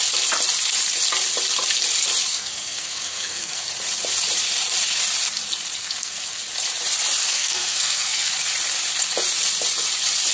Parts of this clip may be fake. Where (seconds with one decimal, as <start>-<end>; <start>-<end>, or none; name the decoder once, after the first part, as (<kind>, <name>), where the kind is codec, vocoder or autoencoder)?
2.3-3.7 (codec, SNAC); 5.8-6.4; 7.2-8.3